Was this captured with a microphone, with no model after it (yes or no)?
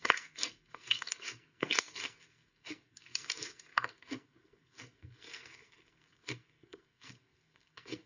no